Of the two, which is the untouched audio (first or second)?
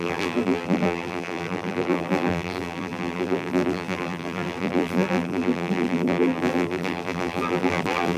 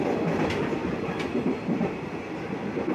second